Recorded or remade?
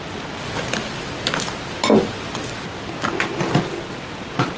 recorded